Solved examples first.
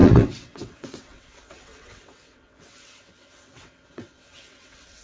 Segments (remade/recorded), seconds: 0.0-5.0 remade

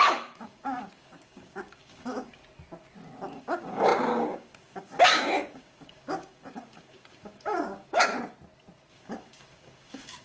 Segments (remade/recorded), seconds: 0.0-2.4 remade; 2.4-3.3 recorded; 3.3-8.1 remade; 8.1-8.9 recorded; 8.9-10.2 remade